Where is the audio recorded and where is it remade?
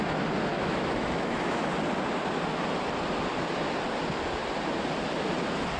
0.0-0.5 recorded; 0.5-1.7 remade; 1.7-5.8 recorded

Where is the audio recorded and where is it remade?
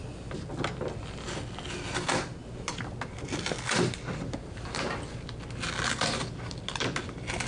0.0-7.5 recorded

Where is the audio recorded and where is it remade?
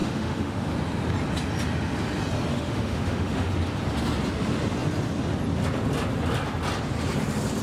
0.0-0.7 remade; 0.7-2.5 recorded; 2.5-3.5 remade; 3.5-7.6 recorded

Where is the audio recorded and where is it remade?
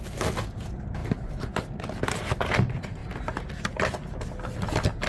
0.0-5.1 recorded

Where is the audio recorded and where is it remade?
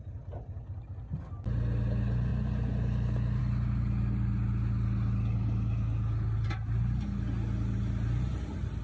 0.0-8.8 recorded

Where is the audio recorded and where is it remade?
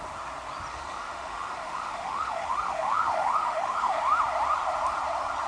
0.0-0.7 recorded; 0.7-4.0 remade; 4.0-5.5 recorded